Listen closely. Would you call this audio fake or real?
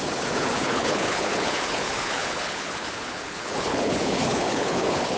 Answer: fake